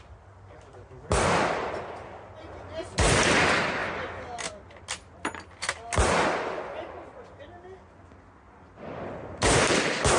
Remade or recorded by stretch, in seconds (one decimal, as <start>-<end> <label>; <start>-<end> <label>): 0.0-10.2 recorded